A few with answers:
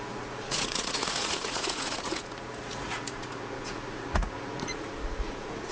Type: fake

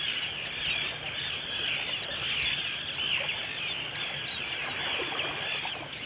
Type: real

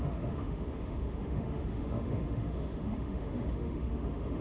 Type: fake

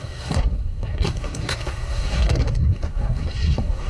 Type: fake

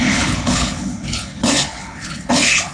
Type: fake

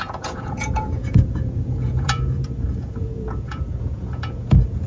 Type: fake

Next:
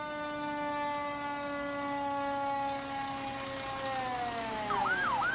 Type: real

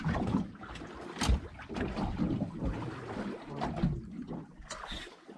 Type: real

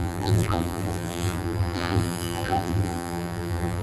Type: fake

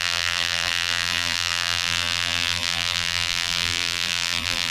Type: fake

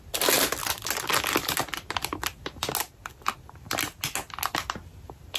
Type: real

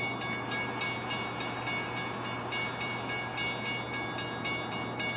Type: real